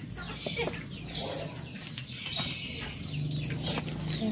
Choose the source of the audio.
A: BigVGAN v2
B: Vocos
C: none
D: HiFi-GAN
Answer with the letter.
C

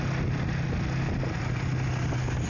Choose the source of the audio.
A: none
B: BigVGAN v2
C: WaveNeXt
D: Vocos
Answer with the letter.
A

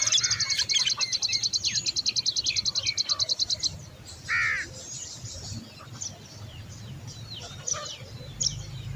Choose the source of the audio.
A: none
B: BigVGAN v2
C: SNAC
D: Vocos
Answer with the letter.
A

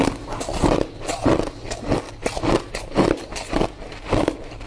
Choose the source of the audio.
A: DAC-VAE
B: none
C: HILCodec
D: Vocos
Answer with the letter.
B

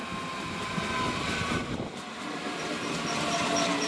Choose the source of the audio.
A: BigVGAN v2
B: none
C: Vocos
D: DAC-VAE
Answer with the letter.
B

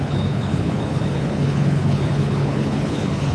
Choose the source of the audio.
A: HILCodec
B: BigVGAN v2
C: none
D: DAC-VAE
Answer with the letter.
A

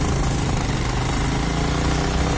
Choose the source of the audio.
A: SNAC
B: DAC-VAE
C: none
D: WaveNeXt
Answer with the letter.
C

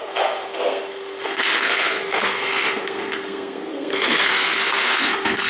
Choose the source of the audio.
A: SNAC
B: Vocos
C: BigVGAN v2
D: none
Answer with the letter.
A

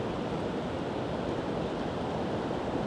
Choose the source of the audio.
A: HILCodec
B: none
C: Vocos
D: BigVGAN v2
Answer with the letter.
B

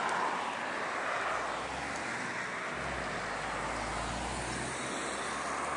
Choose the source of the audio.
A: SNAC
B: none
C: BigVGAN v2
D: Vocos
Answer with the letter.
B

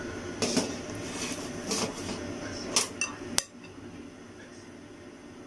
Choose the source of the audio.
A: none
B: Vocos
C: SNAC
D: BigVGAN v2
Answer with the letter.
A